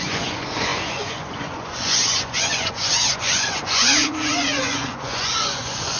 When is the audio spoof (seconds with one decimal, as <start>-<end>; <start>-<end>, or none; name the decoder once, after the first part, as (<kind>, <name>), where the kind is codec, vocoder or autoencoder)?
0.0-6.0 (vocoder, Vocos)